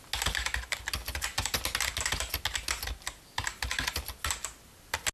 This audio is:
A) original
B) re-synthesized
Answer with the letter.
A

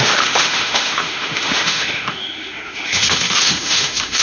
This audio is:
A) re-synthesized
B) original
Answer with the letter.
A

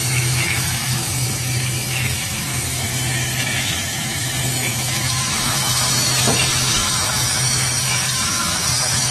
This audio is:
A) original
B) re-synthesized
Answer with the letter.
B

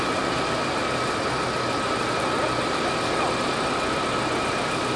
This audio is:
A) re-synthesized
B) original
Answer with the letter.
B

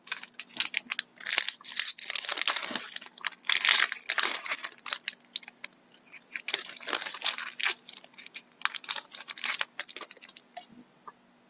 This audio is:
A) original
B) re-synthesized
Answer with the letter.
A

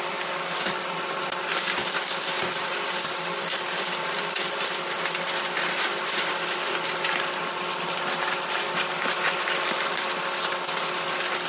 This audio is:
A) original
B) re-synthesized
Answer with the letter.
A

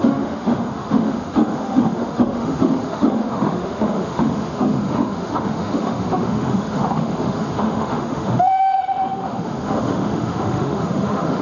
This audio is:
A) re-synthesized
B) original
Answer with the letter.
A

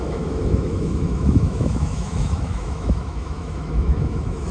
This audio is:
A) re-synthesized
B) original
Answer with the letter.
A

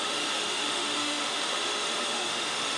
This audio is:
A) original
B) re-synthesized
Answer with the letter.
B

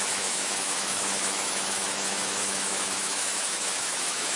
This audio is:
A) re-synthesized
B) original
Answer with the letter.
A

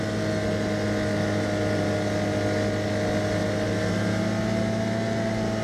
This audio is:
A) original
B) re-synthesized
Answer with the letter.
A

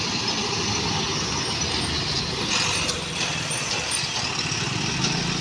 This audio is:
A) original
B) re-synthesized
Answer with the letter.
A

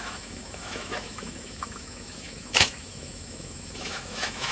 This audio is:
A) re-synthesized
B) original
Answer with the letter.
A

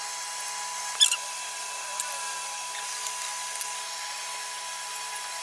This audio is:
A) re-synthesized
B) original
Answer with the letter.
B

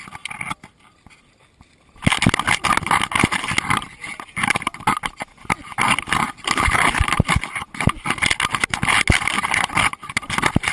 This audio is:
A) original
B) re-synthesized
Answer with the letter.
A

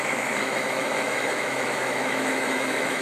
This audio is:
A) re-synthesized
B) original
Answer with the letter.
A